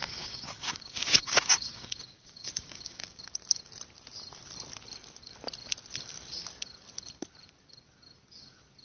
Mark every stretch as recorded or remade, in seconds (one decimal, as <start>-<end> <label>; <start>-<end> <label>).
0.0-3.2 remade; 3.2-8.8 recorded